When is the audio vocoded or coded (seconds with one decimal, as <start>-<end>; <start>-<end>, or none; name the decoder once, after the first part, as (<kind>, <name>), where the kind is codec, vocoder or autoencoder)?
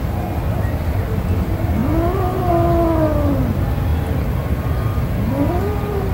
none